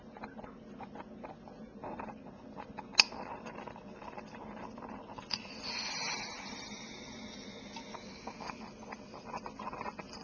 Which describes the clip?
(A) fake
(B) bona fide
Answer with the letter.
B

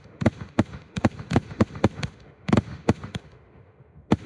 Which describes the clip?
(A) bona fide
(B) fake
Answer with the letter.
B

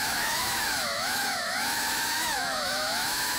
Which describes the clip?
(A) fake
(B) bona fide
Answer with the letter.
A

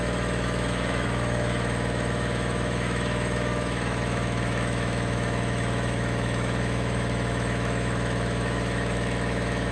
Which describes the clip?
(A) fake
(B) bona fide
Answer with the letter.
A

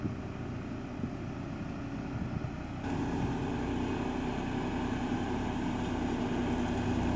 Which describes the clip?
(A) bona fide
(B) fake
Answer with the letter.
A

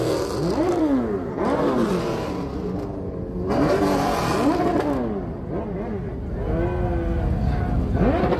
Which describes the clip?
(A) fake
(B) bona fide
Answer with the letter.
B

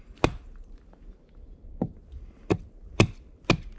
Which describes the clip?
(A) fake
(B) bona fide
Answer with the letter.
B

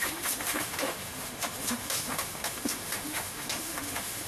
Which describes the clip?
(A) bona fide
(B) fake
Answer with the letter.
B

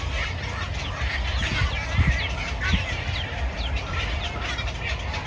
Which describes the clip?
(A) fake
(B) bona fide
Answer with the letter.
B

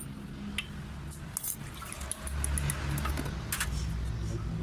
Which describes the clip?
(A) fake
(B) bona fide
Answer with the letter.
B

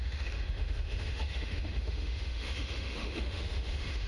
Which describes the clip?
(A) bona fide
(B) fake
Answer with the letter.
B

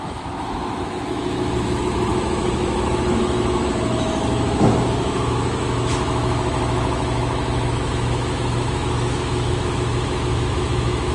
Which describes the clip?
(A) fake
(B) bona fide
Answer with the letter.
A